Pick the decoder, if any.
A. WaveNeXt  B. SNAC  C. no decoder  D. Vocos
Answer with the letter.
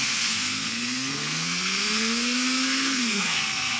B